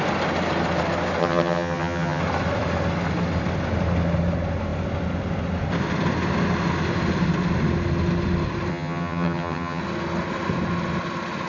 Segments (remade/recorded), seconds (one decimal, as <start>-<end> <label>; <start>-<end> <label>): 0.0-1.2 recorded; 1.2-2.2 remade; 2.2-8.7 recorded; 8.7-9.8 remade; 9.8-11.5 recorded